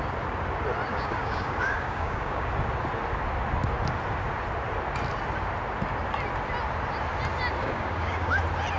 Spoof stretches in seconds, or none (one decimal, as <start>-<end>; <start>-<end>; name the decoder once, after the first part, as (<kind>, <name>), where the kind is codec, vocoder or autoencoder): 0.9-2.5 (codec, DAC); 7.6-8.4